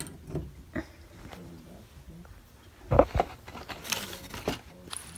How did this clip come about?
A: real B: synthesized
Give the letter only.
A